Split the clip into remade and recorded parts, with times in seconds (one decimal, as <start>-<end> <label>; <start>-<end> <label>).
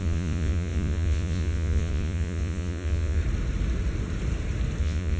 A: 0.0-3.2 remade; 3.2-4.8 recorded; 4.8-5.2 remade